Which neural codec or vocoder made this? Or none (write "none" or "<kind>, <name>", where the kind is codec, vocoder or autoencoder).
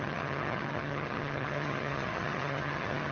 vocoder, HiFi-GAN